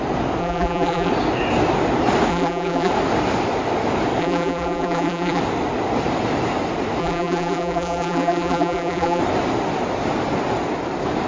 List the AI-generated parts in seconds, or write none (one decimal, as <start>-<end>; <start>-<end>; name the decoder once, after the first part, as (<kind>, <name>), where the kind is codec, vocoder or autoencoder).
0.4-1.1 (vocoder, BigVGAN v2); 2.3-2.9; 4.2-5.4; 7.0-9.2